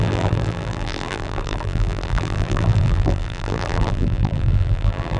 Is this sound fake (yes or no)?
yes